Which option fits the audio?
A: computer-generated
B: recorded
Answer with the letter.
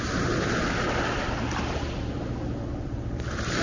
B